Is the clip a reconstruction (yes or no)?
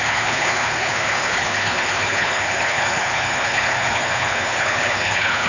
yes